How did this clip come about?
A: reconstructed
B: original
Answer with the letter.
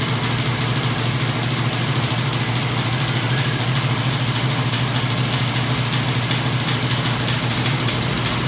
B